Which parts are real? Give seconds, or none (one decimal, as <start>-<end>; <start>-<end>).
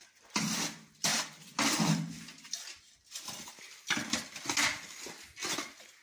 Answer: 0.0-6.0